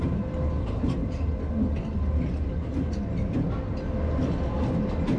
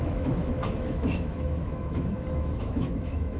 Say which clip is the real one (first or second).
first